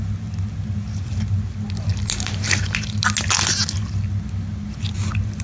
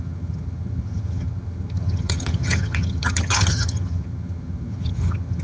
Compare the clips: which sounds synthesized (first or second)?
second